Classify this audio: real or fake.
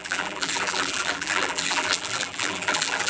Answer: fake